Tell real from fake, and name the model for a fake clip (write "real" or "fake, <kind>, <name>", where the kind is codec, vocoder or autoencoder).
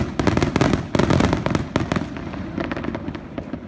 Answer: real